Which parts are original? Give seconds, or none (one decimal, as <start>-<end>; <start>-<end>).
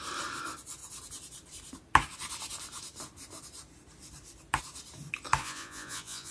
0.0-5.4